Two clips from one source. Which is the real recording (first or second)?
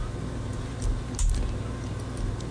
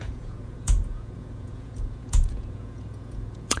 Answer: first